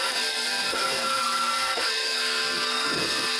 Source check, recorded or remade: remade